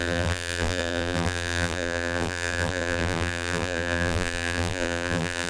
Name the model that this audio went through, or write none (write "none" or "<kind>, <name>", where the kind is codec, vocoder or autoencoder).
vocoder, BigVGAN v2